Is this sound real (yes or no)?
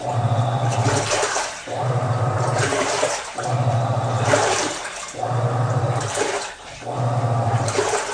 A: no